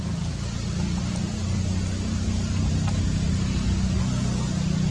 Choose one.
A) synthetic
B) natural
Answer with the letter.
B